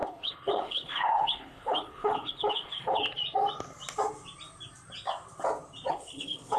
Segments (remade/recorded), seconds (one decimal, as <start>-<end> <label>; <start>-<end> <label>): 0.0-3.0 remade; 3.0-5.9 recorded; 5.9-6.6 remade

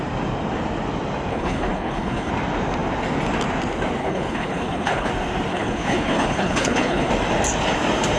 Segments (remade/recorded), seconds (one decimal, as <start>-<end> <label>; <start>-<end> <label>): 0.0-1.3 recorded; 1.3-2.3 remade; 2.3-4.0 recorded; 4.0-5.1 remade; 5.1-5.5 recorded; 5.5-7.1 remade; 7.1-8.2 recorded